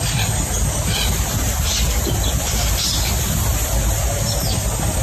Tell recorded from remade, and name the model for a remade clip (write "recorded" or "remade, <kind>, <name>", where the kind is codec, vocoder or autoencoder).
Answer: remade, vocoder, BigVGAN v2